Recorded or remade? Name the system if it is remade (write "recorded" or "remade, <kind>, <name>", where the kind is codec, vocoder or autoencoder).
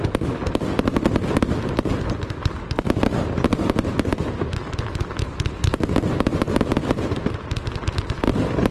recorded